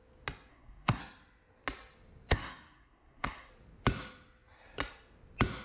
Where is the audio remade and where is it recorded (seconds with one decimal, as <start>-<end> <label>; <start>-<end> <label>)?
0.0-0.5 recorded; 0.5-1.0 remade; 1.0-2.3 recorded; 2.3-3.5 remade; 3.5-5.6 recorded